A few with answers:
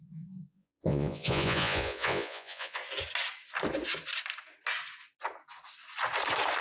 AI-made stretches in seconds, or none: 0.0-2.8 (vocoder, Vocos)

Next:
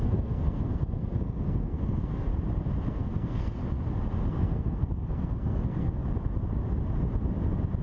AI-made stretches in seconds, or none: 0.0-2.3 (codec, SNAC); 2.9-3.6; 4.3-6.0

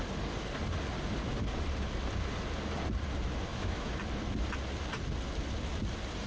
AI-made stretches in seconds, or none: 3.5-4.0 (autoencoder, DAC-VAE)

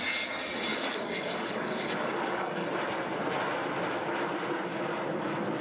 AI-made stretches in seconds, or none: 0.7-2.7 (codec, DAC)

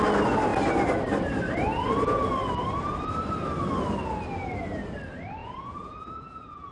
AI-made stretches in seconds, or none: 5.4-6.7 (vocoder, Vocos)